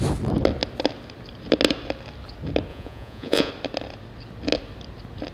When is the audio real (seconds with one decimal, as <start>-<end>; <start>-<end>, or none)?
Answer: 0.0-2.7; 3.5-5.3

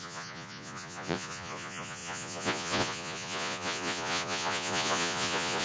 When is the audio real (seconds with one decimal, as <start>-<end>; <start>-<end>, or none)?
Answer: none

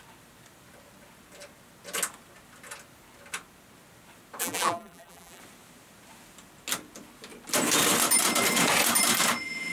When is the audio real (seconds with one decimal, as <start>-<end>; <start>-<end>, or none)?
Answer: 0.0-4.4; 5.4-9.7

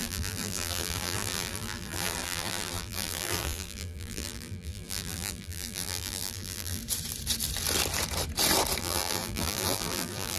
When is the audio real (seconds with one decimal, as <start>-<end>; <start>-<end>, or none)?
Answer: 6.8-8.8

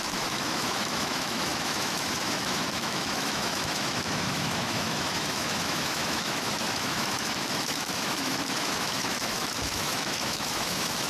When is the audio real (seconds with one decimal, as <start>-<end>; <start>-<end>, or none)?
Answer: none